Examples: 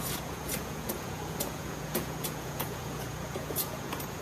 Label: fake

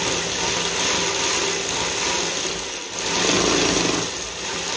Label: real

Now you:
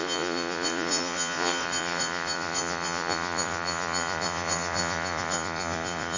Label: fake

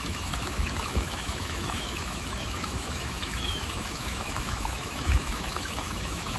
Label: fake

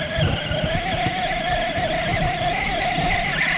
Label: real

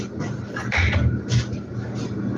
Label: real